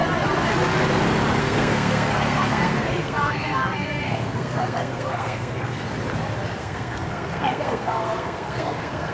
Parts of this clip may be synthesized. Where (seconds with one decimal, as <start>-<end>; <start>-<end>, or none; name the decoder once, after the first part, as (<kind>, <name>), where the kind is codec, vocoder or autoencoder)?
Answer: 1.4-5.8 (codec, SNAC); 6.6-9.1